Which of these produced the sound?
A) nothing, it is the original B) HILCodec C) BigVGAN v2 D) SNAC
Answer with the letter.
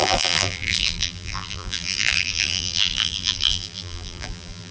C